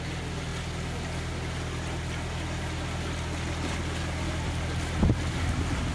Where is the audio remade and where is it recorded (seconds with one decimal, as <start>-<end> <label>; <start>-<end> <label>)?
0.0-5.9 recorded

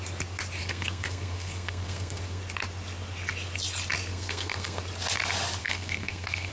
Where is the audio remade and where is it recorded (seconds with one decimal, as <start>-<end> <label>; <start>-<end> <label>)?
0.0-0.6 recorded; 0.6-2.4 remade; 2.4-4.1 recorded; 4.1-4.8 remade; 4.8-5.6 recorded; 5.6-6.5 remade